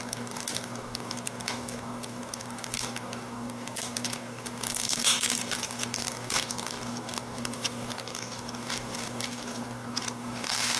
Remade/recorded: remade